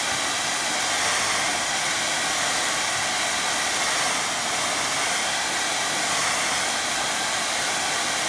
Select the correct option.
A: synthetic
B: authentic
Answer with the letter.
B